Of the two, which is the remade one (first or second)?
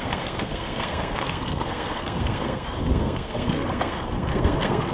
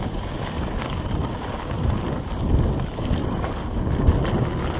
first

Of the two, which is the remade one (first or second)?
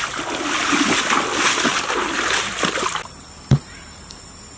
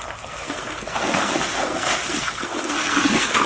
second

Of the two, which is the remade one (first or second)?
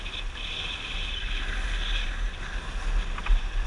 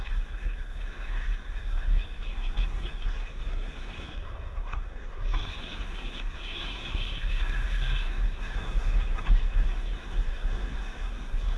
second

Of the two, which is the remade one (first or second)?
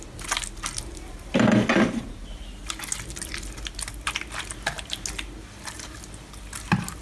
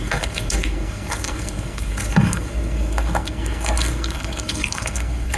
second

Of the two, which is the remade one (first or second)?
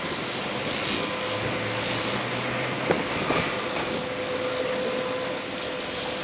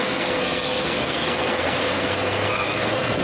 second